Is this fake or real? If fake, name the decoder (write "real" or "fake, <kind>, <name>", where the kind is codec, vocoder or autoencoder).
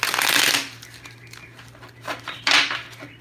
real